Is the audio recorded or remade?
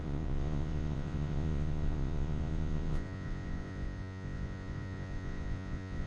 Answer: remade